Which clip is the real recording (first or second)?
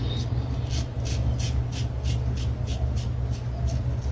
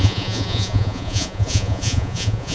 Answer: first